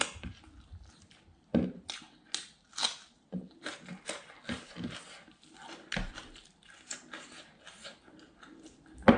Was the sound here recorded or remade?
recorded